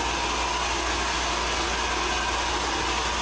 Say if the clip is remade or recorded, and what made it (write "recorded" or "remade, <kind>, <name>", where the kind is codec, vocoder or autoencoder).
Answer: recorded